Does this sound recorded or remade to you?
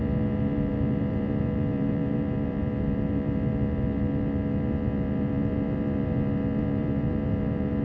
remade